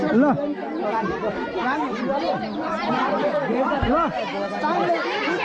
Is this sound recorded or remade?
recorded